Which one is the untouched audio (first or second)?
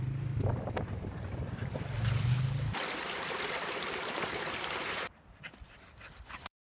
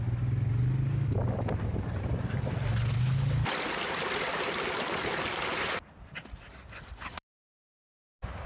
second